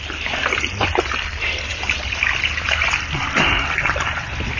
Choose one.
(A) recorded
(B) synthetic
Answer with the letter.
A